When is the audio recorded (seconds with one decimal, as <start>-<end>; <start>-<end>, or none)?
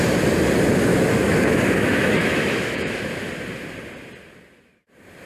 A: 0.0-0.9; 3.0-5.3